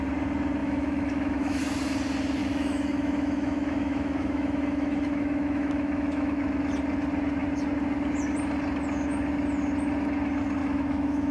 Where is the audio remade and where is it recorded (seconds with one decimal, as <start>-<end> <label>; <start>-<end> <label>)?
0.0-0.6 recorded; 0.6-1.6 remade; 1.6-2.4 recorded; 2.4-6.4 remade; 6.4-10.6 recorded; 10.6-11.3 remade